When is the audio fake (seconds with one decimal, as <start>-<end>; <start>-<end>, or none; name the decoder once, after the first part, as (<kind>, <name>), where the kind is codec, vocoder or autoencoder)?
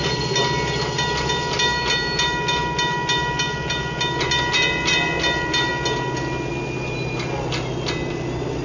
none